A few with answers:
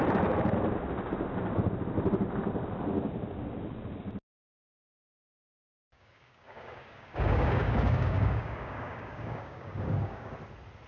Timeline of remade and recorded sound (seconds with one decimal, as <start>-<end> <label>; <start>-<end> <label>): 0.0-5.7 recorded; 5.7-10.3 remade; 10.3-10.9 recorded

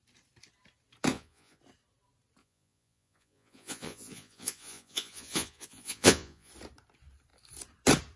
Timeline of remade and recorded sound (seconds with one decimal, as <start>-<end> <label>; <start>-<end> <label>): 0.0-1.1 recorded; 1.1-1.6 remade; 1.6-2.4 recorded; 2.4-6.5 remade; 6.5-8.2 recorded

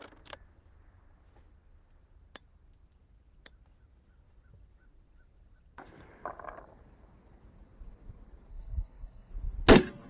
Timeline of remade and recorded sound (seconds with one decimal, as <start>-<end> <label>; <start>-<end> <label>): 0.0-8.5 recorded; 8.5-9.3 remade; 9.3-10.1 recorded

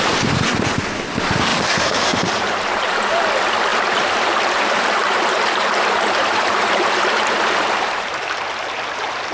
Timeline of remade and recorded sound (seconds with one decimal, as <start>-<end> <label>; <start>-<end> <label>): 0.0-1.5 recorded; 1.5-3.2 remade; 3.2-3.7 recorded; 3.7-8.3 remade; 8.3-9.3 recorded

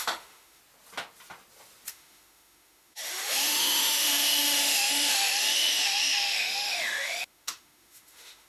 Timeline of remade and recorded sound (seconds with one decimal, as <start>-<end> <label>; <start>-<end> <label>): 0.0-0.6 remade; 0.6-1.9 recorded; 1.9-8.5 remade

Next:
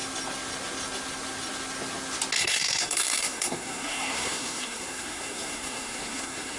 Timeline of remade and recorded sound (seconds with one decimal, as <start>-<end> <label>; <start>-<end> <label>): 0.0-2.4 recorded; 2.4-6.6 remade

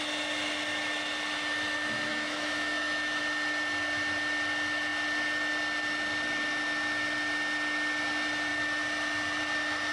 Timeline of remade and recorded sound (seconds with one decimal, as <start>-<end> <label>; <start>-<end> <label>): 0.0-2.1 recorded; 2.1-3.2 remade; 3.2-9.9 recorded

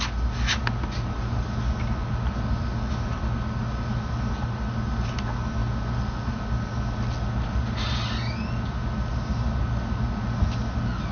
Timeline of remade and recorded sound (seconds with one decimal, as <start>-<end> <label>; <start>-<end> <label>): 0.0-11.1 recorded